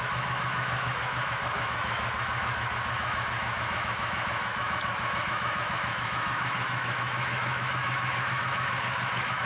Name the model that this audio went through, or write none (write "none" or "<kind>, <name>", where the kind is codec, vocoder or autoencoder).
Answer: autoencoder, DAC-VAE